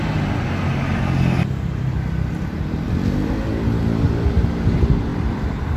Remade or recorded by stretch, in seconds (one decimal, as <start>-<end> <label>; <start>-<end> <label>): 0.0-5.1 recorded; 5.1-5.8 remade